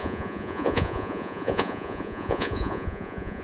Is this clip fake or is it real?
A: fake